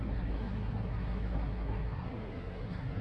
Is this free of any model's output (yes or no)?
no